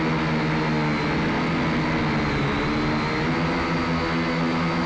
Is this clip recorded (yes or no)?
yes